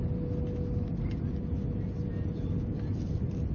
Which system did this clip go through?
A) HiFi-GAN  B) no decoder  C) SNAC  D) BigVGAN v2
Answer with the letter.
B